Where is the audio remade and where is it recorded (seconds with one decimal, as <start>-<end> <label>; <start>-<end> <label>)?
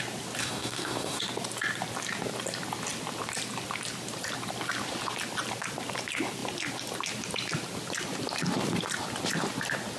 0.0-0.4 recorded; 0.4-1.2 remade; 1.2-10.0 recorded